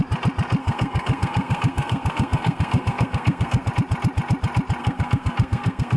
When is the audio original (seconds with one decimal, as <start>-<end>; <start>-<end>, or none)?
0.0-0.6; 3.7-4.8